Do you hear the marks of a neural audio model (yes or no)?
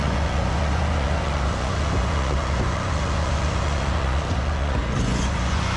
yes